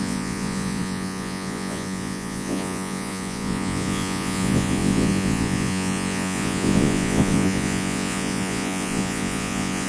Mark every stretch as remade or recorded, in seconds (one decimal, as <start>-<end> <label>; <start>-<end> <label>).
0.0-9.9 remade